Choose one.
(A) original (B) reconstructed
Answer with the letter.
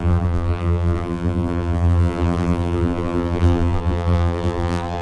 B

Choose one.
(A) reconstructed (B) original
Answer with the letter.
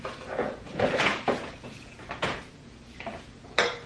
A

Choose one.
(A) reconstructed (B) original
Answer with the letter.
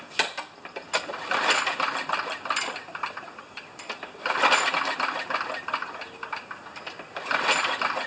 B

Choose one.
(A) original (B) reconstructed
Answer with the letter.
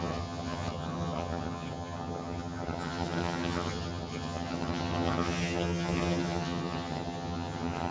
B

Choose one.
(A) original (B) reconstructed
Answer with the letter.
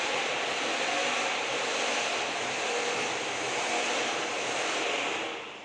A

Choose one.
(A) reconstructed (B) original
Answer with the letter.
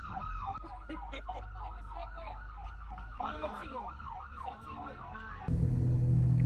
A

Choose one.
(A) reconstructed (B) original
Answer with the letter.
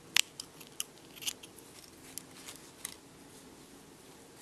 B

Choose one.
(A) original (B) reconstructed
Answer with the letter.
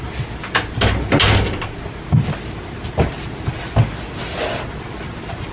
A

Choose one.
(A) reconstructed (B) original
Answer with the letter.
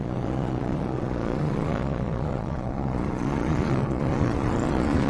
A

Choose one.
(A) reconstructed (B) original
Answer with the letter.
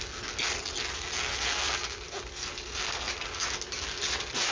B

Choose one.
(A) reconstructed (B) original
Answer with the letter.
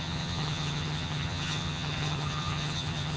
A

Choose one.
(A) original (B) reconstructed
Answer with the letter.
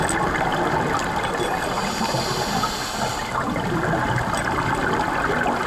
A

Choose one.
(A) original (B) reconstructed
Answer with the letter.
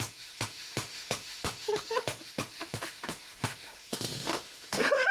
B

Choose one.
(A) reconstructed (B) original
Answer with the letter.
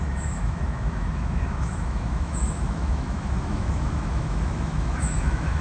A